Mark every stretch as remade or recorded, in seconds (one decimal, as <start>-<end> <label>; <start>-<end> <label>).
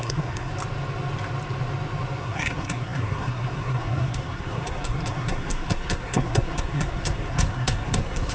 0.0-0.5 remade; 0.5-2.2 recorded; 2.2-8.3 remade